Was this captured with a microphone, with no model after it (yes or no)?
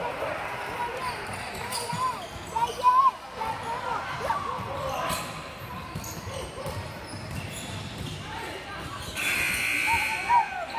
yes